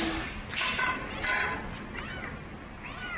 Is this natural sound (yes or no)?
yes